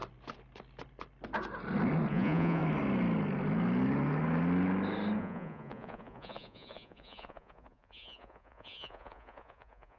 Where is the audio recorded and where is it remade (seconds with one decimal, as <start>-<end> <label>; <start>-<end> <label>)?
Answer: 0.0-2.1 recorded; 2.1-2.6 remade; 2.6-5.2 recorded; 5.2-10.0 remade